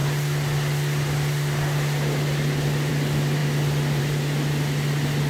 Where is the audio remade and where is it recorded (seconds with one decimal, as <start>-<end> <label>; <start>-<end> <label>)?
0.0-5.3 recorded